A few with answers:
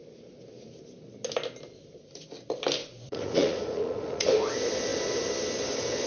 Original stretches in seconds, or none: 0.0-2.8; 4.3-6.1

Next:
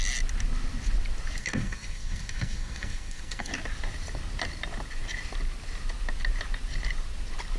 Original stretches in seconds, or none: 0.0-1.4; 3.5-7.6

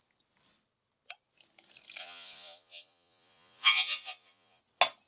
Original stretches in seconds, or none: 0.0-2.0; 4.6-5.1

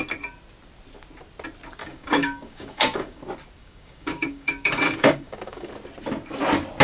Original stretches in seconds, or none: 0.0-1.8; 3.2-3.6; 5.7-6.8

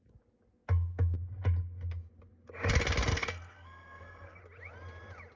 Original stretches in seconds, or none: 0.0-3.1; 4.4-5.4

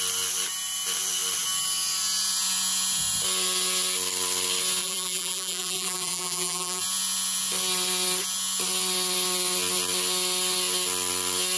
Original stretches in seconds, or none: 0.0-4.8; 6.8-11.6

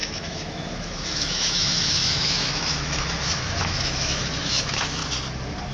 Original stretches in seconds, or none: 5.0-5.7

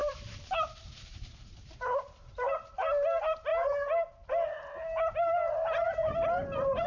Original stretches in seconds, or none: 2.5-6.9